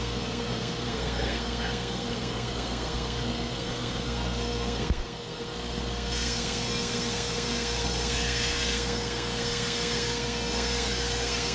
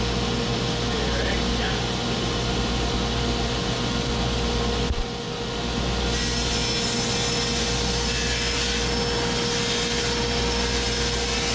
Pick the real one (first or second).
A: second